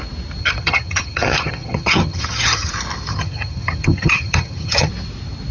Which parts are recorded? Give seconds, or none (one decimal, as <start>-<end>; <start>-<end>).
0.0-0.4; 2.7-3.1; 4.9-5.5